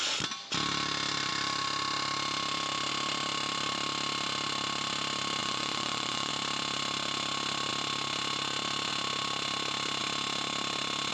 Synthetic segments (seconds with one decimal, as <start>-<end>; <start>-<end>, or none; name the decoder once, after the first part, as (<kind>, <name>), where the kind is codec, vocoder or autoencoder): 5.4-6.3 (vocoder, Vocos)